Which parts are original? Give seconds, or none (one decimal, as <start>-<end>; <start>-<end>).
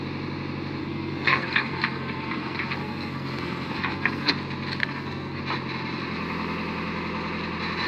0.0-0.8; 4.3-4.8; 5.4-7.9